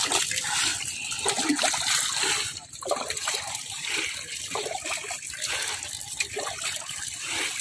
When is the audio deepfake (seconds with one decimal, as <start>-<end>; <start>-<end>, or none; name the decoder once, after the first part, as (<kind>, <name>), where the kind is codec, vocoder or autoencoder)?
none